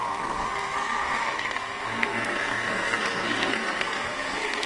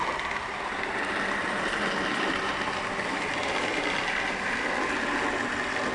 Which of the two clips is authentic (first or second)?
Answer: second